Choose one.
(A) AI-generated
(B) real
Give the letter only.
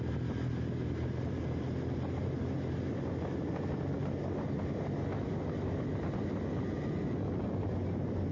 B